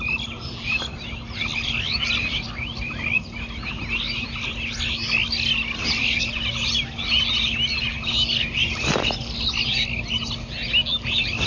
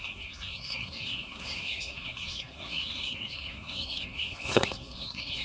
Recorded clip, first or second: first